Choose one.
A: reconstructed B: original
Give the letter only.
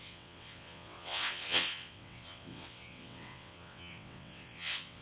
A